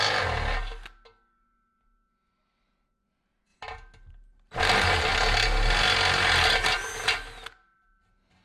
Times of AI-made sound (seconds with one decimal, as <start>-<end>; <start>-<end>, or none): none